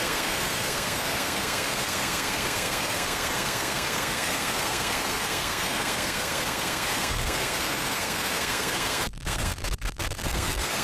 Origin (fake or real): fake